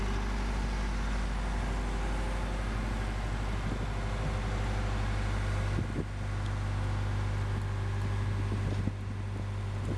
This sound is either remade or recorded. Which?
recorded